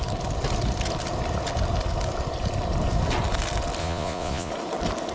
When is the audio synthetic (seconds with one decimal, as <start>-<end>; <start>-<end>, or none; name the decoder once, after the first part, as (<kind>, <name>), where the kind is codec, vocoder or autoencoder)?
3.8-4.5 (vocoder, Vocos)